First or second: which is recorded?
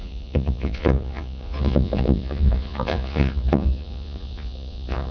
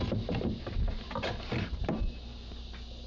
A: second